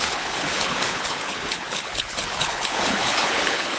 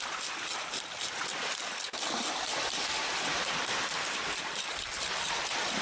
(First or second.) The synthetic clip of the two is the first